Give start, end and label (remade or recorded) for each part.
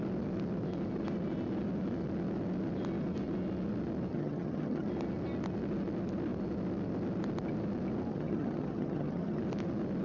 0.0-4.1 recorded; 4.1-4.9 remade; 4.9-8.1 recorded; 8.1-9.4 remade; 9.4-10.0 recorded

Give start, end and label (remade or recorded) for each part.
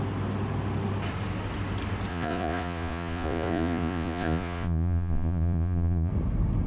0.0-2.1 recorded; 2.1-6.1 remade; 6.1-6.7 recorded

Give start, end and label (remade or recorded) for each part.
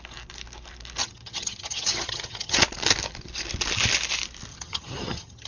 0.0-1.0 recorded; 1.0-2.6 remade; 2.6-4.5 recorded; 4.5-5.5 remade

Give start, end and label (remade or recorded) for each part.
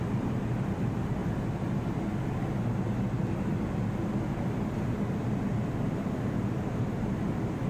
0.0-7.7 recorded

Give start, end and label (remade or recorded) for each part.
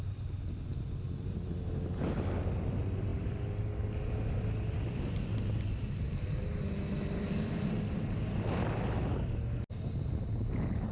0.0-10.9 recorded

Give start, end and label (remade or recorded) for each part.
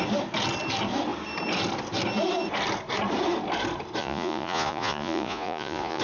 0.0-4.0 recorded; 4.0-6.0 remade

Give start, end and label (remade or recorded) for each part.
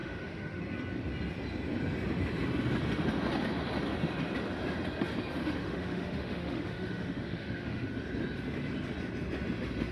0.0-0.6 remade; 0.6-5.4 recorded; 5.4-7.9 remade; 7.9-9.9 recorded